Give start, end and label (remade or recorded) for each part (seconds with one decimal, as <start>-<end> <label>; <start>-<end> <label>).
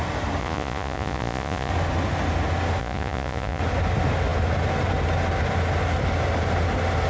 0.0-0.4 recorded; 0.4-1.7 remade; 1.7-2.8 recorded; 2.8-3.6 remade; 3.6-7.1 recorded